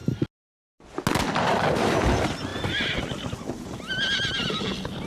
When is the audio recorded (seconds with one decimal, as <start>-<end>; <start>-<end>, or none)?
0.0-5.1